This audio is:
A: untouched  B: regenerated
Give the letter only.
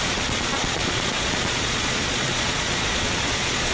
B